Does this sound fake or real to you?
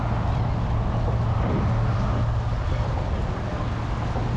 real